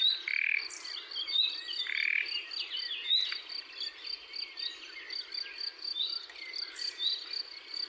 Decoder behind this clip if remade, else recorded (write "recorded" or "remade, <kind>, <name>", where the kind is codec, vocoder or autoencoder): recorded